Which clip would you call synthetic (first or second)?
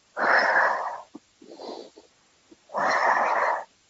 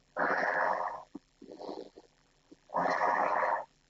second